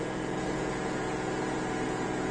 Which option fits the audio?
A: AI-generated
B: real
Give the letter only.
A